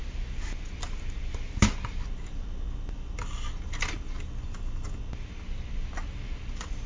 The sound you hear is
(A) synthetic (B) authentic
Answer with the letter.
B